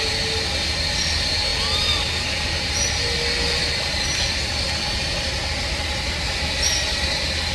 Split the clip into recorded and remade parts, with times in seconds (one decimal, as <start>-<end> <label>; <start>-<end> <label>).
0.0-7.5 recorded